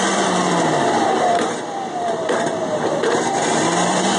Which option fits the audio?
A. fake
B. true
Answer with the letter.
A